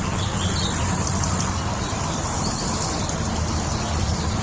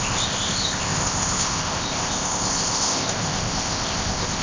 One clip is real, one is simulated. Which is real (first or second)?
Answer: first